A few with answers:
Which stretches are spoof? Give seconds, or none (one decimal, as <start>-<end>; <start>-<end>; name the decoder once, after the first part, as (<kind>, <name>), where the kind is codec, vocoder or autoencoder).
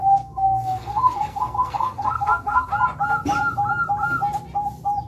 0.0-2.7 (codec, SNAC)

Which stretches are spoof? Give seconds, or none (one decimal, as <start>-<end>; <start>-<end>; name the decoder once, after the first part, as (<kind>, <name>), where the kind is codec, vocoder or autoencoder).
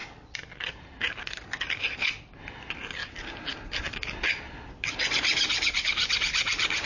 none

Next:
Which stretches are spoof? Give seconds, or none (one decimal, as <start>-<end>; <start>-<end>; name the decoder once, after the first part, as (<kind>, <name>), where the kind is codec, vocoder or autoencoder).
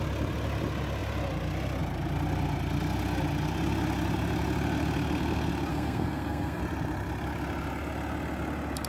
5.7-6.6 (codec, SNAC)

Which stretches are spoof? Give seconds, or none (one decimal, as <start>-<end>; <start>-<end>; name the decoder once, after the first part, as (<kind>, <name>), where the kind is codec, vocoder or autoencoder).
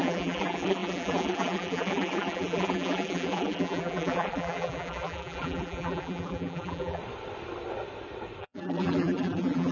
0.0-7.0 (vocoder, BigVGAN v2); 8.4-9.7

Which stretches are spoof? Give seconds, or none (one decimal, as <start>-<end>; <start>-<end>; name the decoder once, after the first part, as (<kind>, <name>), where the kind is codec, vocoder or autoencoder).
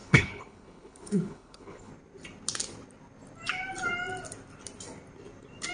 0.0-1.9 (codec, HILCodec)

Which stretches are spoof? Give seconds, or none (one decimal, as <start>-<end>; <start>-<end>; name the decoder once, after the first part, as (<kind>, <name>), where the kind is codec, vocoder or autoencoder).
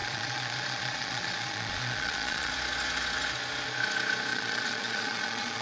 0.0-2.5 (vocoder, Vocos); 4.3-5.6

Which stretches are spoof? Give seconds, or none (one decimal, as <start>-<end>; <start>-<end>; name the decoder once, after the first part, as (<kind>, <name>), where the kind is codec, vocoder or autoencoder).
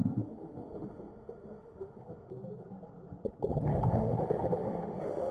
0.0-2.3 (autoencoder, DAC-VAE); 3.7-5.3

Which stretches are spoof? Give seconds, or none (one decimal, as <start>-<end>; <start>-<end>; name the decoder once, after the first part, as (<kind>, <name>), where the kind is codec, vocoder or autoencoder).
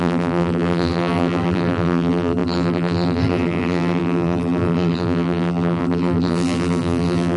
0.0-7.4 (vocoder, BigVGAN v2)